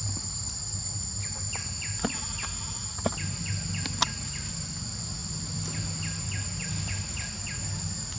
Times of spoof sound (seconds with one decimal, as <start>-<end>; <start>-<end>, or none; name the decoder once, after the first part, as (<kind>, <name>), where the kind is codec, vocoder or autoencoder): none